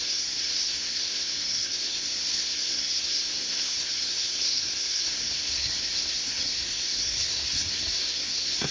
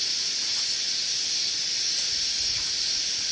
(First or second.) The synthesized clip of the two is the first